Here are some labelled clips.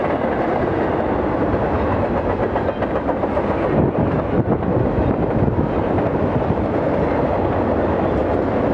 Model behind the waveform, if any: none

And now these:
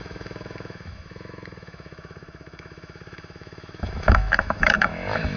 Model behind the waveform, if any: autoencoder, DAC-VAE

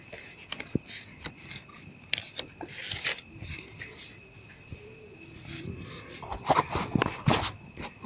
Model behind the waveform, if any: none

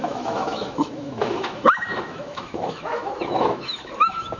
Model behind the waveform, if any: autoencoder, DAC-VAE